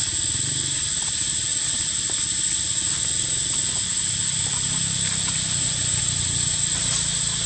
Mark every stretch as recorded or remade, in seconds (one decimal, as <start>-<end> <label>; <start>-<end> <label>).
0.0-7.5 recorded